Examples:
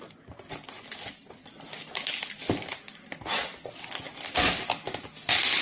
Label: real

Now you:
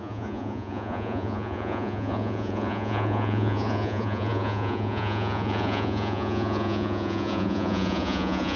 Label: fake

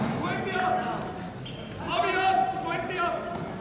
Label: real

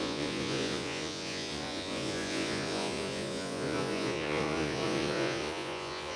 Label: fake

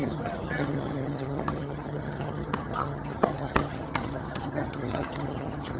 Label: fake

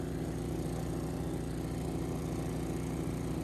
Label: real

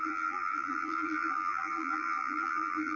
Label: fake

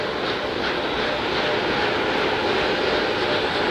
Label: real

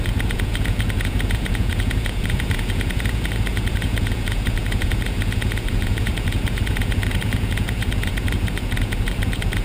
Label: fake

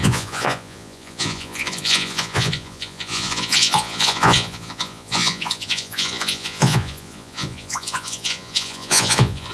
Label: fake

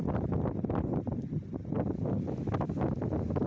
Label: real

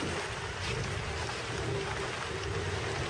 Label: real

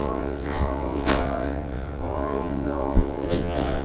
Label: fake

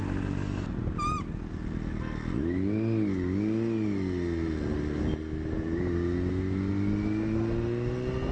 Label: real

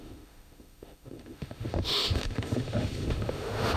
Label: fake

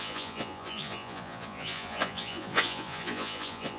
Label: fake